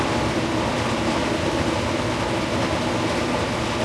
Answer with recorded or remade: recorded